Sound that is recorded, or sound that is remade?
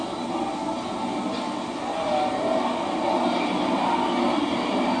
recorded